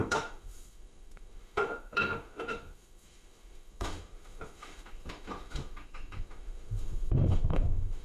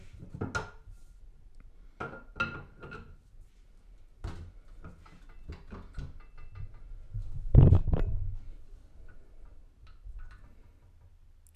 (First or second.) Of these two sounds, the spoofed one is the first